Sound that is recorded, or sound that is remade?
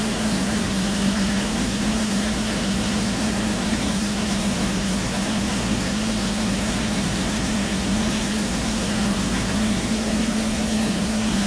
remade